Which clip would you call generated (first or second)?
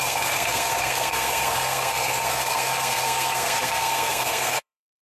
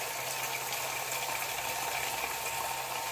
first